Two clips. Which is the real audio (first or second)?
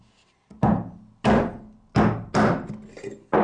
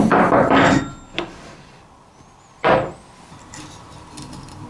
first